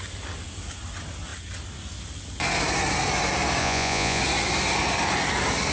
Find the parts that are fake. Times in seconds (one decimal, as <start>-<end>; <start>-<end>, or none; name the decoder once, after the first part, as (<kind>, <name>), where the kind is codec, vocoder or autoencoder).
3.6-4.2 (vocoder, Vocos)